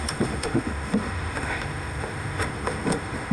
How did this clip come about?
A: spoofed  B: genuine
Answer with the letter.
A